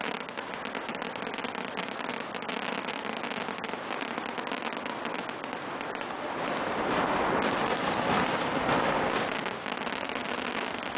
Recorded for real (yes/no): yes